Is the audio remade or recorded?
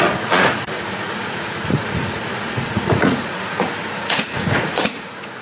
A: remade